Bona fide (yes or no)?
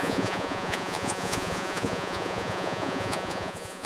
no